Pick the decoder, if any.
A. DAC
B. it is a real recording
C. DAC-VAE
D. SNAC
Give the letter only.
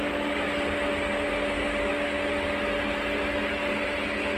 B